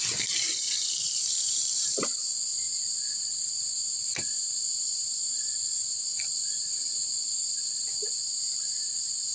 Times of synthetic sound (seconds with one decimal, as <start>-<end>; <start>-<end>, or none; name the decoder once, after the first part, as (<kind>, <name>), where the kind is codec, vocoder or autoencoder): 0.0-9.3 (vocoder, BigVGAN v2)